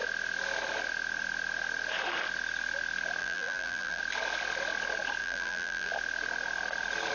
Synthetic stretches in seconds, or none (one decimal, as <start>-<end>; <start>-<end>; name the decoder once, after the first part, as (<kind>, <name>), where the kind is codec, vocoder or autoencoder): 3.2-4.0 (vocoder, BigVGAN v2); 5.2-5.9